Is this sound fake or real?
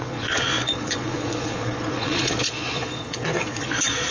fake